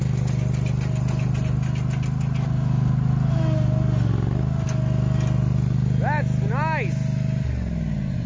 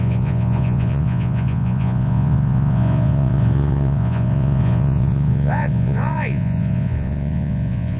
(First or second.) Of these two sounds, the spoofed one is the second